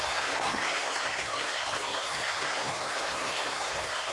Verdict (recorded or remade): remade